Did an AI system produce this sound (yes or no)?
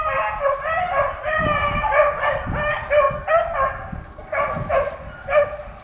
no